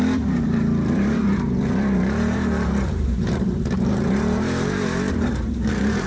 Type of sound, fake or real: fake